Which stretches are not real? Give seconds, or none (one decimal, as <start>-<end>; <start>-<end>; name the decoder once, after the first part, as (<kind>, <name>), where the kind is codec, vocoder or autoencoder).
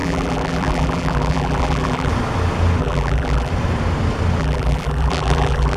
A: 0.0-2.1 (vocoder, BigVGAN v2); 2.8-3.5; 4.4-5.8